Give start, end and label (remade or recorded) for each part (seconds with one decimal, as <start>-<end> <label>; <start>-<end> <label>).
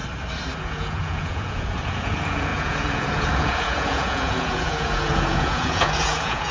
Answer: 0.0-0.6 recorded; 0.6-6.5 remade